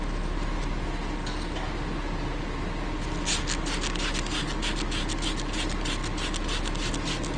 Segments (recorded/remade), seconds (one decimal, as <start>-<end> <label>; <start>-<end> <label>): 0.0-7.4 recorded